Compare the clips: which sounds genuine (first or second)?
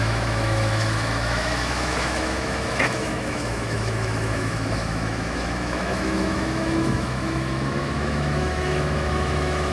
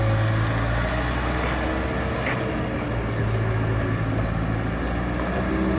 second